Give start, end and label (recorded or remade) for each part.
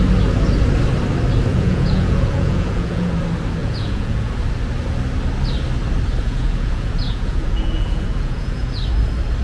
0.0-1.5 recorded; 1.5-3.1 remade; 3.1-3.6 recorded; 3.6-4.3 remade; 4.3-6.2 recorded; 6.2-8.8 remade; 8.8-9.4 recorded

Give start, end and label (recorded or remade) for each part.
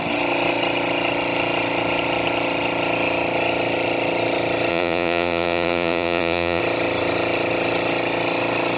0.0-4.7 recorded; 4.7-6.6 remade; 6.6-8.8 recorded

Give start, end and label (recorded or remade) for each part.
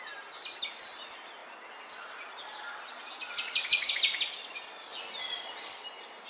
0.0-6.3 recorded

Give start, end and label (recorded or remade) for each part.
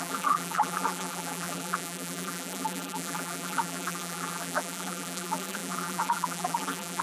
0.0-7.0 remade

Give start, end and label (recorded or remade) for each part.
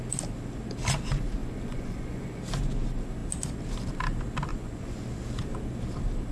0.0-1.4 recorded; 1.4-2.4 remade; 2.4-4.5 recorded; 4.5-5.0 remade; 5.0-6.3 recorded